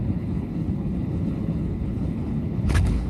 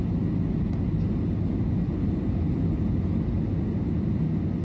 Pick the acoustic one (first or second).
second